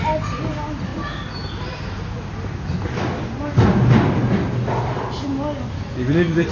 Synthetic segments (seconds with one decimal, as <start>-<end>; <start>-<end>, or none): none

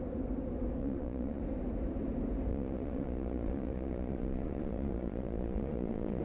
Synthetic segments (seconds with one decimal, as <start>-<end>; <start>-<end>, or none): 0.8-1.4; 2.5-6.2